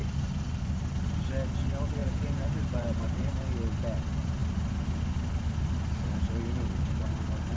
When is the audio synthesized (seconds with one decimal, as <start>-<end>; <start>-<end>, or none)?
2.0-3.3